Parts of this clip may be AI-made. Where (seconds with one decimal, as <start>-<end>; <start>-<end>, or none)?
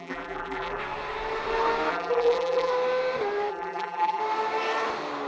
0.0-0.8; 1.9-2.7; 3.5-4.2